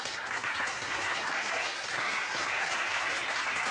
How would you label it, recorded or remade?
remade